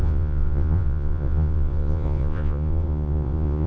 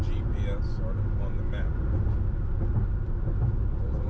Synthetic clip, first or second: first